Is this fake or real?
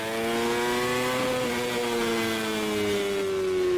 real